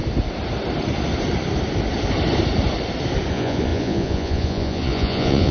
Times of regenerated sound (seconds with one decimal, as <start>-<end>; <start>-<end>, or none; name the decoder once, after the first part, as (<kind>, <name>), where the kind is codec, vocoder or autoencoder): 3.3-5.5 (vocoder, Vocos)